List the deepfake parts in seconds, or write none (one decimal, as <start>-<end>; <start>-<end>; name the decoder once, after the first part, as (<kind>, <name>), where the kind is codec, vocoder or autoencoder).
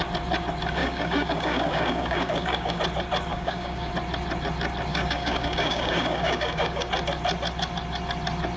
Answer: 0.8-2.8 (codec, DAC); 3.3-3.9; 4.9-6.9